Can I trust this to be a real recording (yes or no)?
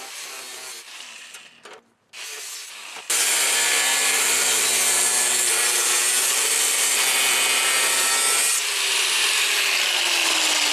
yes